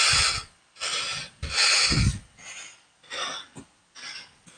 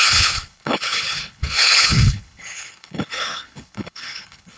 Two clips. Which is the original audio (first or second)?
first